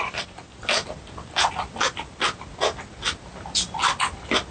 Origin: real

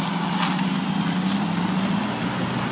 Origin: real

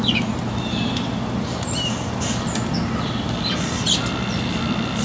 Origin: real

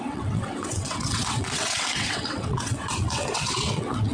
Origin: fake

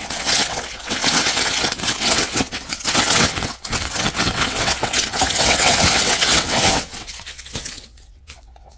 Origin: fake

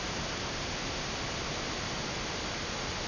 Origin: real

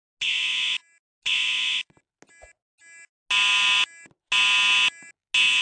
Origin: real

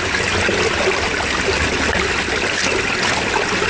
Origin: real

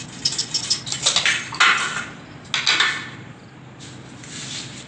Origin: real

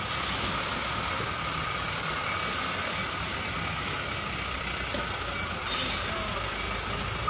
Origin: real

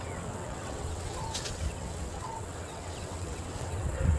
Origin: fake